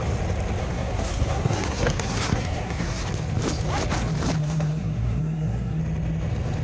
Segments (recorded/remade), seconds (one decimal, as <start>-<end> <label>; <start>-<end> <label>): 0.0-0.6 recorded; 0.6-3.0 remade; 3.0-4.4 recorded; 4.4-5.8 remade; 5.8-6.6 recorded